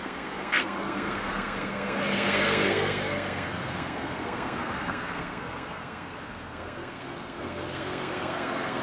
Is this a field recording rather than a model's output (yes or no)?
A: no